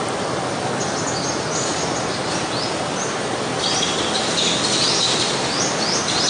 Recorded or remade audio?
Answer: recorded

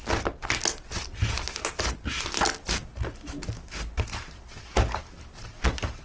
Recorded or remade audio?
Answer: recorded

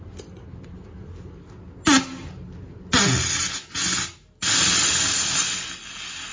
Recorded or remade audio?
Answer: recorded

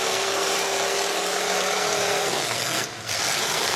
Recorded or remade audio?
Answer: remade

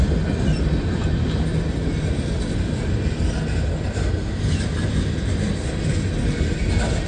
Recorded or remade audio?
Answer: recorded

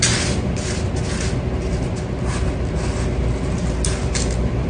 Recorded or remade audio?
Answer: recorded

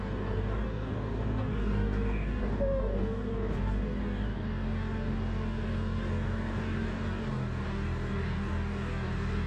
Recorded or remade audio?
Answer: remade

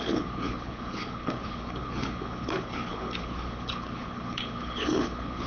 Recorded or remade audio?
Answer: remade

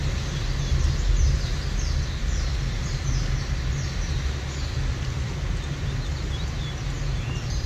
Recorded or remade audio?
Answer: recorded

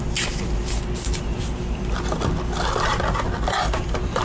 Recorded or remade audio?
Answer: recorded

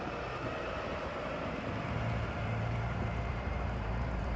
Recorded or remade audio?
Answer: remade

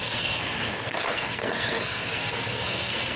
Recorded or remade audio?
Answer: remade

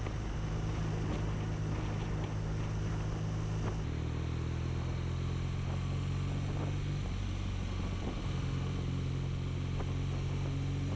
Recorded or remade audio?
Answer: recorded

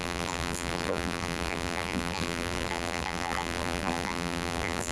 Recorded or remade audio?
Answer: remade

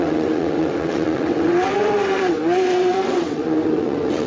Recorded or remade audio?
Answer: remade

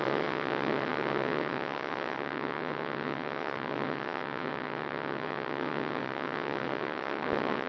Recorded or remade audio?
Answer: remade